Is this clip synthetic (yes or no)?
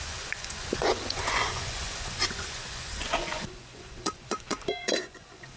yes